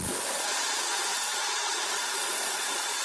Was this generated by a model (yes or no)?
yes